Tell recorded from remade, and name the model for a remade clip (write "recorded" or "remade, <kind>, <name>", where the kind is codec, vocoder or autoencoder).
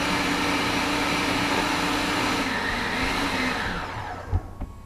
recorded